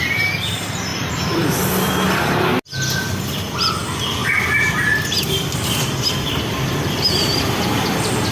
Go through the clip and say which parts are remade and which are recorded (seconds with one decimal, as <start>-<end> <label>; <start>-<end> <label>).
0.0-0.9 recorded; 0.9-1.9 remade; 1.9-4.2 recorded; 4.2-7.6 remade; 7.6-8.3 recorded